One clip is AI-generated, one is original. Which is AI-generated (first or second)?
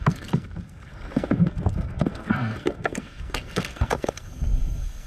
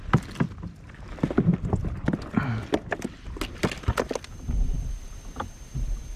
first